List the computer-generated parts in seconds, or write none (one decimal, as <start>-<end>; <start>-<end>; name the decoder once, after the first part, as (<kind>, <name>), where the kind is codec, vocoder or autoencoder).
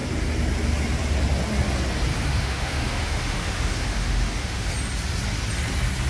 2.1-4.7 (autoencoder, DAC-VAE)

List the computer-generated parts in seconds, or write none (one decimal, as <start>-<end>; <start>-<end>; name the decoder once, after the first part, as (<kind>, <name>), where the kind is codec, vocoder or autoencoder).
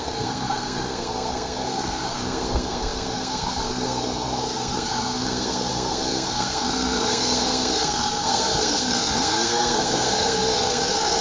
0.0-11.2 (codec, SNAC)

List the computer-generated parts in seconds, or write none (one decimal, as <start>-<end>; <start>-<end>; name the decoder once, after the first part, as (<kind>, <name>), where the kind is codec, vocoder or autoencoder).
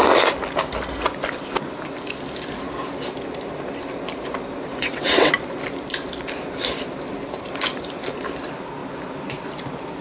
4.7-5.3 (vocoder, WaveNeXt)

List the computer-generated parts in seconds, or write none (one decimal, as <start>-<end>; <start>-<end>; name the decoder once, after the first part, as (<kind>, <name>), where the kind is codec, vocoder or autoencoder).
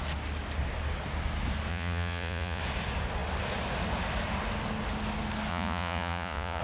1.7-2.6 (vocoder, Vocos); 5.5-6.6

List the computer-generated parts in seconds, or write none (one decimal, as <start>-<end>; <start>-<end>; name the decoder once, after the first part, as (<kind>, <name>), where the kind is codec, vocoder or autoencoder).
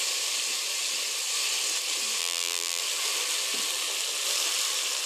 2.2-2.8 (vocoder, BigVGAN v2)